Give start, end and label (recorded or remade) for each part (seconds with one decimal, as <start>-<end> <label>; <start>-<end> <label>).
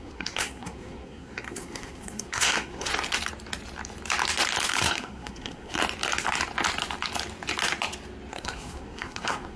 0.0-2.9 remade; 2.9-4.8 recorded; 4.8-5.8 remade; 5.8-8.3 recorded; 8.3-9.6 remade